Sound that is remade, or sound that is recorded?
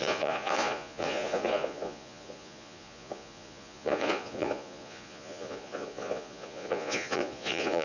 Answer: remade